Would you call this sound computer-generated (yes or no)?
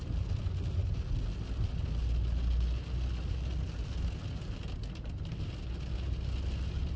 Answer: no